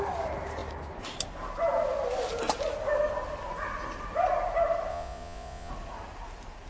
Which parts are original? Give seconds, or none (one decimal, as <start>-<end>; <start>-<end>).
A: 0.0-4.9; 5.7-6.7